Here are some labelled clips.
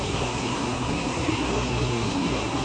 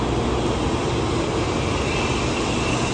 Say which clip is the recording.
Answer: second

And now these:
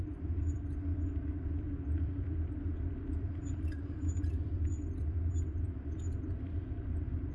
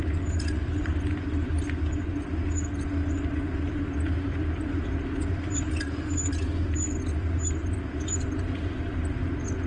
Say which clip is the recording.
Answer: second